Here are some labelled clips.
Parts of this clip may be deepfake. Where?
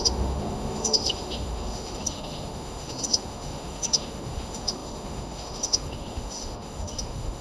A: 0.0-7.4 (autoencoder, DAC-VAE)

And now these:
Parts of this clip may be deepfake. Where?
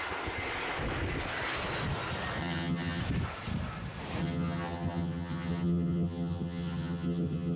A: 2.4-3.0 (vocoder, HiFi-GAN); 4.2-7.6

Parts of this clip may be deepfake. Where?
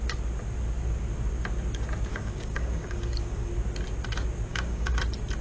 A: 2.1-3.5 (codec, DAC); 4.5-5.0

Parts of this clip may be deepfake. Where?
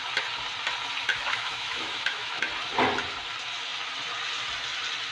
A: 1.1-2.5 (autoencoder, DAC-VAE)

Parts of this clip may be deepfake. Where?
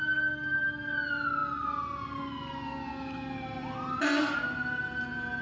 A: none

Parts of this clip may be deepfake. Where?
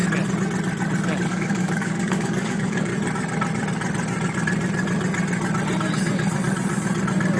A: 1.3-2.9 (codec, DAC)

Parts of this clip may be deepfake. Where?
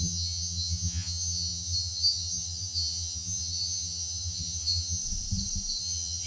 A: 0.0-5.0 (vocoder, HiFi-GAN); 5.8-6.3